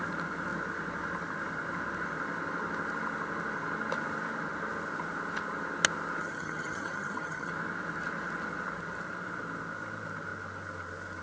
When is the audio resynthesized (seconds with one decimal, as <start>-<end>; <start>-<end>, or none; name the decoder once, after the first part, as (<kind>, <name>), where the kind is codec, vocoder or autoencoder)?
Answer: 6.2-7.5 (vocoder, HiFi-GAN)